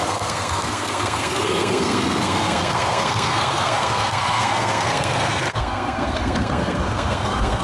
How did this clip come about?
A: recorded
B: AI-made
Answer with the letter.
B